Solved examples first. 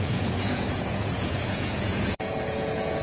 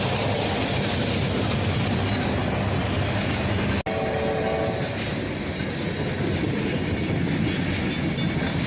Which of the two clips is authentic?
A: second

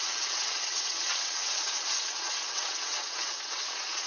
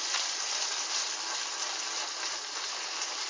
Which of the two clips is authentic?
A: second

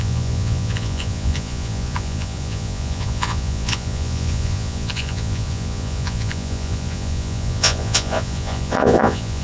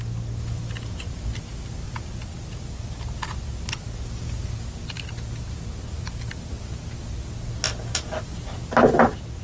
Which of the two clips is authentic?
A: second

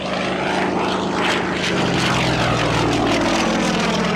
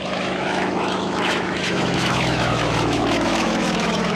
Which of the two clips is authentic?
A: first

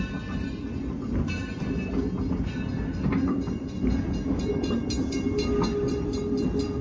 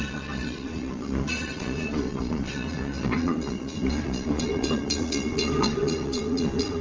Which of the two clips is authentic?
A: first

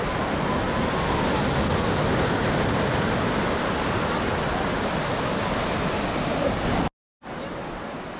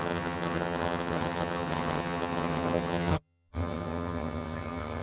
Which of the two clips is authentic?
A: first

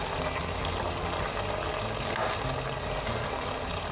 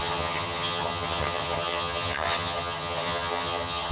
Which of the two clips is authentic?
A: first